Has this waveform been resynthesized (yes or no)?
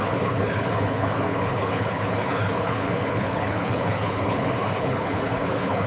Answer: yes